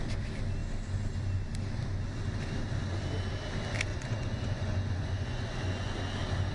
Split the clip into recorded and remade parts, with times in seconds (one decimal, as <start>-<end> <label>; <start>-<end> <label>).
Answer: 0.0-3.9 recorded; 3.9-6.0 remade; 6.0-6.5 recorded